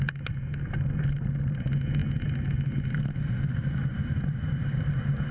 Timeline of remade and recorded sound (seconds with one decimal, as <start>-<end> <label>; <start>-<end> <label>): 0.0-5.3 recorded